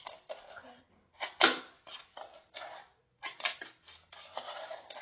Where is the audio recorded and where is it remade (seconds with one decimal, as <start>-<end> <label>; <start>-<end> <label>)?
0.0-5.0 recorded